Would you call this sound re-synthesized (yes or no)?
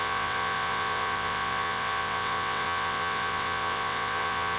yes